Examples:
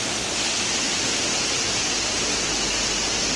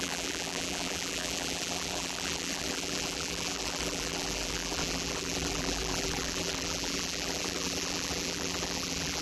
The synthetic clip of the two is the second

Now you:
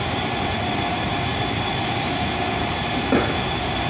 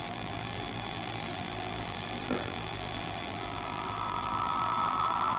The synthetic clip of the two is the second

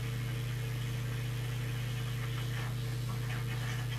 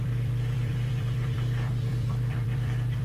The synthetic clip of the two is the second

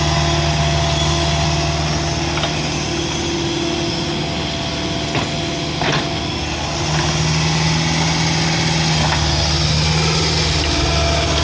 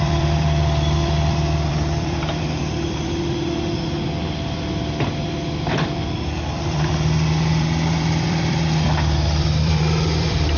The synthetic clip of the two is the second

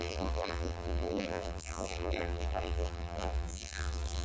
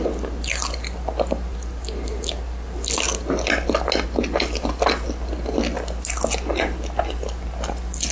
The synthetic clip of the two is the first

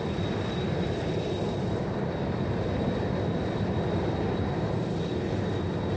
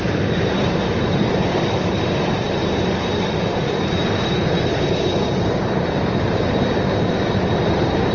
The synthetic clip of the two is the second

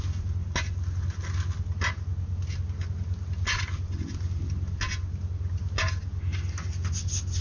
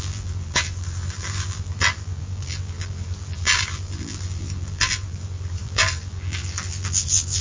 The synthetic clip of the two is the second